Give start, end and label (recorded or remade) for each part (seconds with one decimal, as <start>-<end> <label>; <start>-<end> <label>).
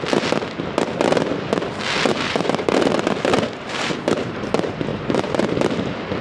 0.0-2.1 recorded; 2.1-4.5 remade; 4.5-4.9 recorded; 4.9-6.2 remade